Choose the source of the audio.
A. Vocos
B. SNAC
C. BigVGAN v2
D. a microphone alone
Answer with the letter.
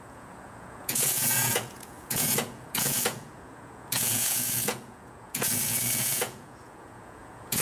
A